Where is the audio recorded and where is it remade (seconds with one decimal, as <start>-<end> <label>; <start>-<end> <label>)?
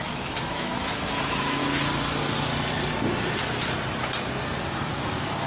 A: 0.0-1.6 remade; 1.6-4.9 recorded; 4.9-5.5 remade